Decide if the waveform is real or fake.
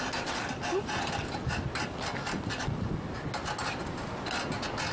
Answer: real